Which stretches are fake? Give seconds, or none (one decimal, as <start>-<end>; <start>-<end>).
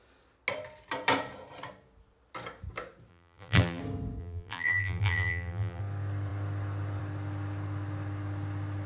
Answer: 3.1-3.8; 4.2-5.8